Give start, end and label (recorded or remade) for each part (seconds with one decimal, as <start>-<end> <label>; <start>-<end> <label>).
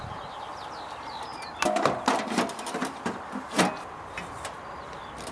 0.0-5.3 recorded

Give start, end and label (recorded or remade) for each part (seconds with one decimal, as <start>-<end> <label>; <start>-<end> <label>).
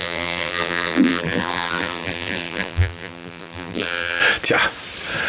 0.0-4.2 remade; 4.2-5.3 recorded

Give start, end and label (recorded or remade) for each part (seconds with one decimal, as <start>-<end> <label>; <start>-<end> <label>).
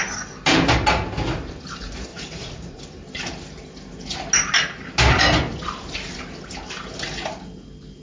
0.0-2.1 recorded; 2.1-2.8 remade; 2.8-8.0 recorded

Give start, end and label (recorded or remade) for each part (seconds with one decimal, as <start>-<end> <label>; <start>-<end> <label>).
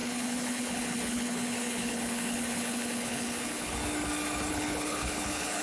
0.0-3.8 remade; 3.8-4.5 recorded; 4.5-5.6 remade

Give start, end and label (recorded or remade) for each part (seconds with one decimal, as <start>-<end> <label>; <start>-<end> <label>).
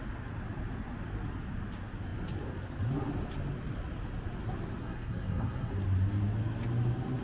0.0-4.8 recorded; 4.8-5.7 remade; 5.7-7.2 recorded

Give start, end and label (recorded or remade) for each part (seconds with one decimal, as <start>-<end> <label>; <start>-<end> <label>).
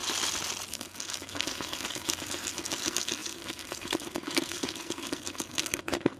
0.0-0.7 recorded; 0.7-6.2 remade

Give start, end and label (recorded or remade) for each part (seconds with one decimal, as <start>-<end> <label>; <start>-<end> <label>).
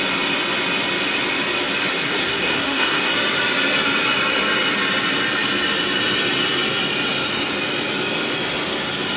0.0-1.9 recorded; 1.9-3.1 remade; 3.1-9.2 recorded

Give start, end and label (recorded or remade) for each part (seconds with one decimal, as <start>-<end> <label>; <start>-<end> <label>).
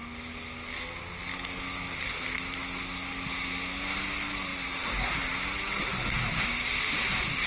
0.0-7.5 recorded